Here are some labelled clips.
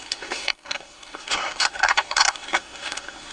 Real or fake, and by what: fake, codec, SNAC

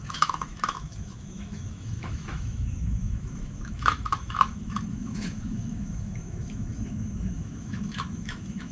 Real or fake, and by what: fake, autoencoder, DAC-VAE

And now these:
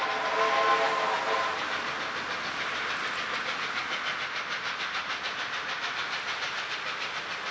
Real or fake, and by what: real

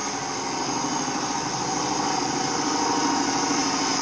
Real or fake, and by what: real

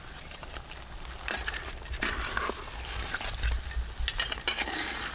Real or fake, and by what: real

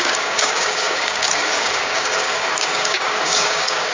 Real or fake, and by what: fake, codec, DAC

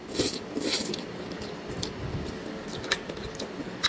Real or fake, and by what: real